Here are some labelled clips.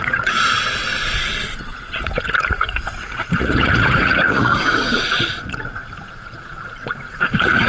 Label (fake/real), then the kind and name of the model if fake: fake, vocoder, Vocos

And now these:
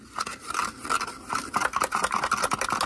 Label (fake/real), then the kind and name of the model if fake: real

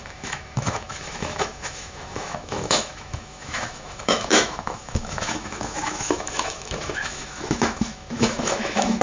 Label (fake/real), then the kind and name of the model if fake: fake, autoencoder, DAC-VAE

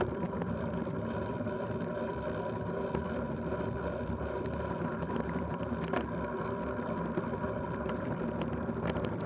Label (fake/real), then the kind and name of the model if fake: fake, vocoder, BigVGAN v2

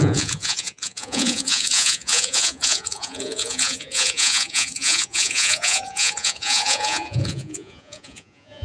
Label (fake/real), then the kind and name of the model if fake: fake, vocoder, Vocos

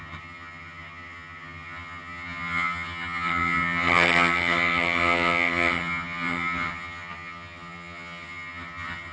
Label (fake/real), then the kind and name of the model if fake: fake, vocoder, HiFi-GAN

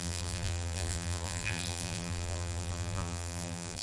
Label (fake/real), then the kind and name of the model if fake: fake, vocoder, BigVGAN v2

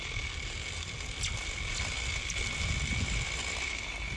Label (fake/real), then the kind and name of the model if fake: real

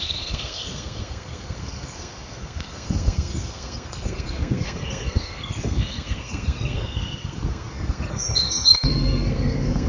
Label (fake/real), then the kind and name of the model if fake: fake, codec, SNAC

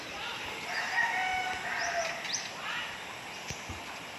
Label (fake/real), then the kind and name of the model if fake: real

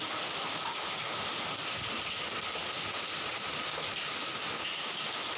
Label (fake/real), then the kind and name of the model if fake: real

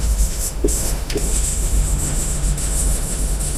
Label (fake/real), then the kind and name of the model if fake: fake, autoencoder, DAC-VAE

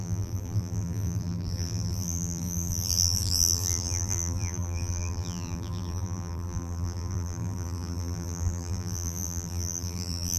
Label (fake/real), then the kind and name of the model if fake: fake, vocoder, BigVGAN v2